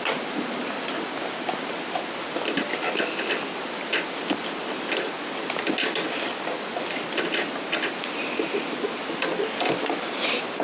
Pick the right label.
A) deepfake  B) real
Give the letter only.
B